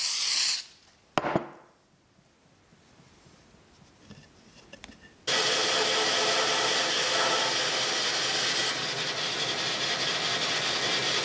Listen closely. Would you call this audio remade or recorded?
recorded